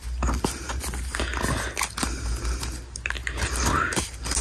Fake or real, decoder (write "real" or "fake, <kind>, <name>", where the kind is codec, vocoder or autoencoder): real